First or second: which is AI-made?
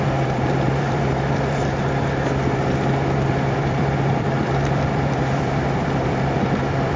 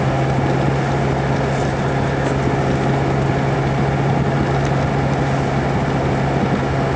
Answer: first